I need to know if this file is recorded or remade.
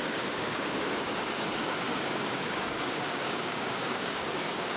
remade